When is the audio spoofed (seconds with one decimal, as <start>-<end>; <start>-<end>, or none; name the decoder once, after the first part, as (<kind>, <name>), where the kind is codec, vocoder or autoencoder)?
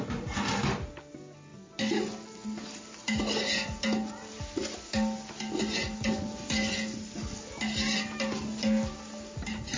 none